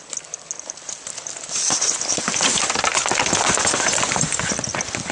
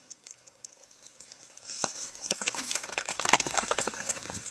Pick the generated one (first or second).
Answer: second